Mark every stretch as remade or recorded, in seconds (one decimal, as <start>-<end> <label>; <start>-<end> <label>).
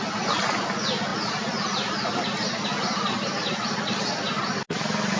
0.0-5.2 recorded